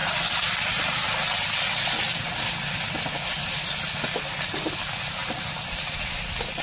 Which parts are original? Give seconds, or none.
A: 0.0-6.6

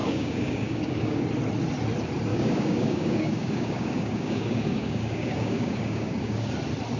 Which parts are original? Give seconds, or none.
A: 1.2-2.3; 6.5-7.0

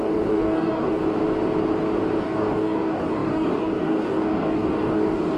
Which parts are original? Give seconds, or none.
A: 1.0-2.2

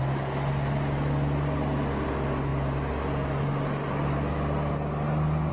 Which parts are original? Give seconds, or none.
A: 0.0-5.5

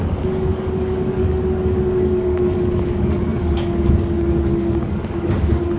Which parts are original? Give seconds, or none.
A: none

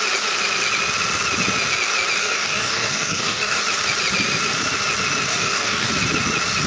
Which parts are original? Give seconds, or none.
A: 0.0-2.2; 3.6-5.3; 5.9-6.7